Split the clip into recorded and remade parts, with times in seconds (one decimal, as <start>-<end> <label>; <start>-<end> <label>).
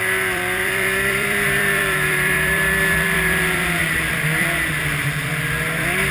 0.0-6.1 remade